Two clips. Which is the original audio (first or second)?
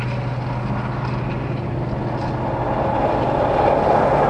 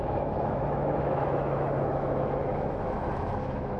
first